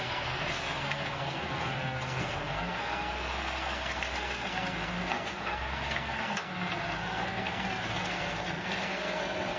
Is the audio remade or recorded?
remade